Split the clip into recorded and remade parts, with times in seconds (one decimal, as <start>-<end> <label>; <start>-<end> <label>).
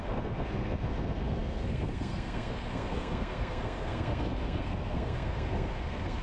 0.0-6.2 remade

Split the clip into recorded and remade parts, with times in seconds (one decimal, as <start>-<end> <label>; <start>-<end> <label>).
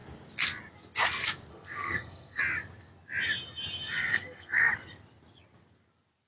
0.0-1.5 recorded; 1.5-2.4 remade; 2.4-4.1 recorded; 4.1-4.7 remade; 4.7-6.3 recorded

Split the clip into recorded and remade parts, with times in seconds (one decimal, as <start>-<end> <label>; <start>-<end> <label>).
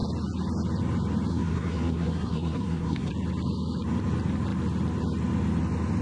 0.0-1.3 recorded; 1.3-3.1 remade; 3.1-6.0 recorded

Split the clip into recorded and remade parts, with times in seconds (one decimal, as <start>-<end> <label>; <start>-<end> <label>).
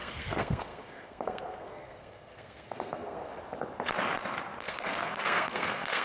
0.0-3.3 remade; 3.3-4.6 recorded; 4.6-6.0 remade